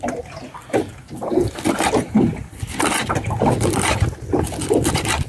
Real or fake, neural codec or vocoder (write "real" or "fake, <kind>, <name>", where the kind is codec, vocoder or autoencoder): real